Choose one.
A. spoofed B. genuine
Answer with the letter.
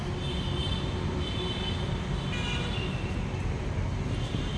B